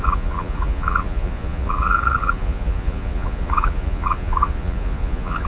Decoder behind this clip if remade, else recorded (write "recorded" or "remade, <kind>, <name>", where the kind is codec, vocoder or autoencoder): remade, vocoder, Vocos